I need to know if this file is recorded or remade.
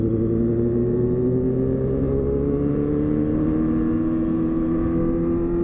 recorded